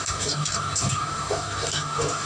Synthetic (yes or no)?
yes